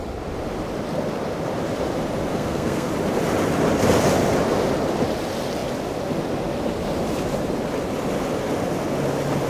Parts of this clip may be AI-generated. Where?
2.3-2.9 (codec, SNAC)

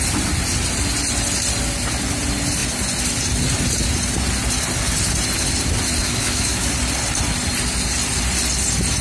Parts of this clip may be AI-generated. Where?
6.2-6.7 (autoencoder, DAC-VAE)